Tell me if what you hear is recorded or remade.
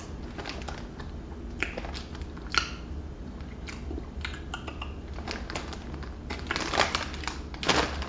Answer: recorded